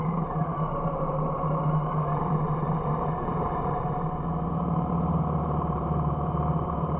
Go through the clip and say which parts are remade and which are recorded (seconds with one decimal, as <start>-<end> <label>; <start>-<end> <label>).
0.0-0.5 remade; 0.5-4.5 recorded; 4.5-7.0 remade